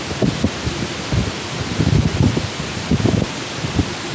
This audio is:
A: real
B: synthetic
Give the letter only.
A